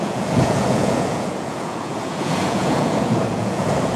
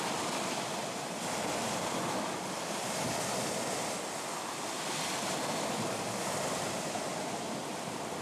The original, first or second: second